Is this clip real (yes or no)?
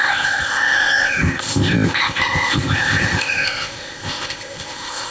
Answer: no